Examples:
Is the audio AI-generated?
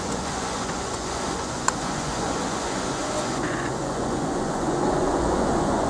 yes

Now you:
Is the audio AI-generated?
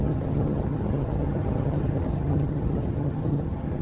yes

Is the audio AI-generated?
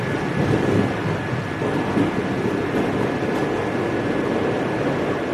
no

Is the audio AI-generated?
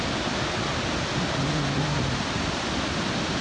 no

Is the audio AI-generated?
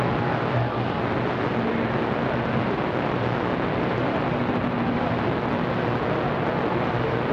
no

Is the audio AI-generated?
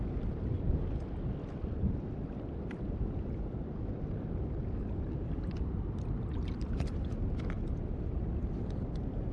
no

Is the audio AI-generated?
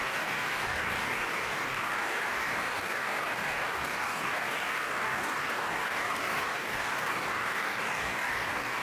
yes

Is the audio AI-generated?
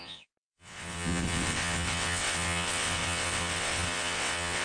yes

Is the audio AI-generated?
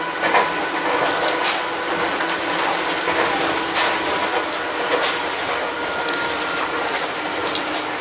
no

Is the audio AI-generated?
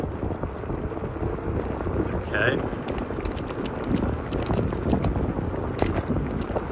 no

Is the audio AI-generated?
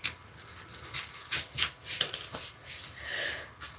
no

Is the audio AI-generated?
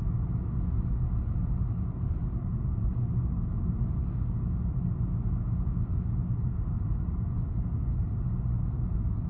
no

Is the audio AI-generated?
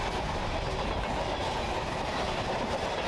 no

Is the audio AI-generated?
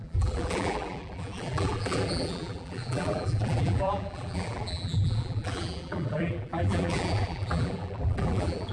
yes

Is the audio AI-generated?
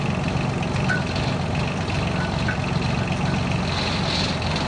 no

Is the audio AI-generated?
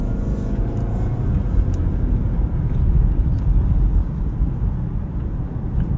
no